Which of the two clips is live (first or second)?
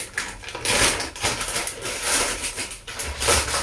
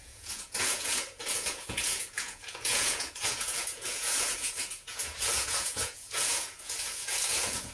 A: first